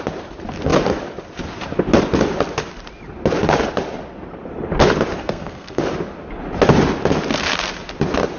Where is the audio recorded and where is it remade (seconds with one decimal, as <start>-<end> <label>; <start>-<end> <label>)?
0.0-5.2 recorded; 5.2-5.8 remade; 5.8-8.4 recorded